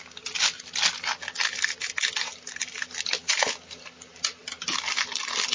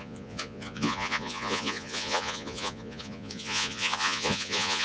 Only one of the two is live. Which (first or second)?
first